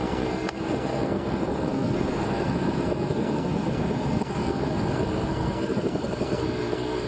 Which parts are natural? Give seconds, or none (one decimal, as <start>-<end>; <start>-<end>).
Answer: none